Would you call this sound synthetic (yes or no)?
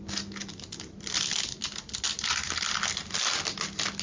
no